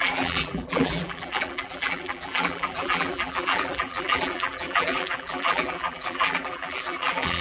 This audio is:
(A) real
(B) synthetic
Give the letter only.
B